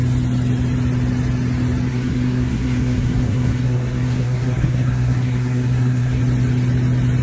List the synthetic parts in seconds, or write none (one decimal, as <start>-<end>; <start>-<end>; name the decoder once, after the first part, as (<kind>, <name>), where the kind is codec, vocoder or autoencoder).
1.9-6.2 (codec, SNAC)